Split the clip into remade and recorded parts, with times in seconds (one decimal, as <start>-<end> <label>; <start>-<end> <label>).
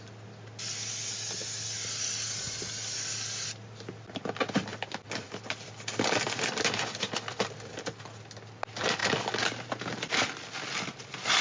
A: 0.0-4.7 recorded; 4.7-7.7 remade; 7.7-11.4 recorded